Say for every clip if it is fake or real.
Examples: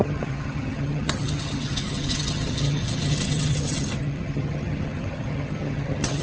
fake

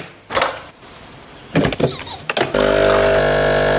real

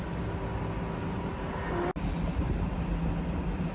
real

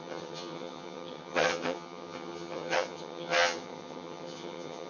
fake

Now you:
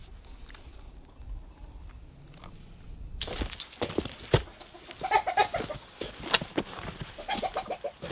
real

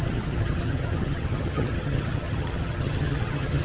fake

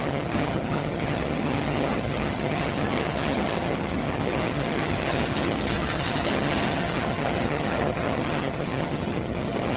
fake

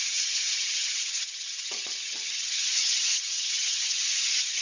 fake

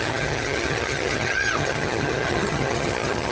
fake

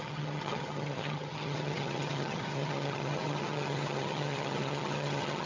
fake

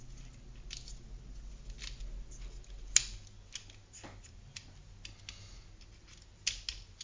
real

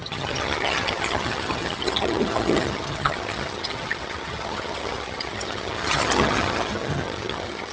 fake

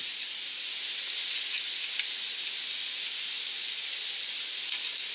real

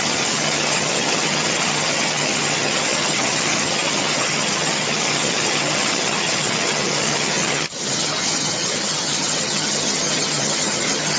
fake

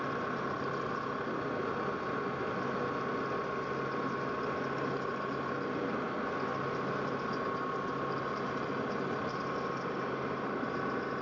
real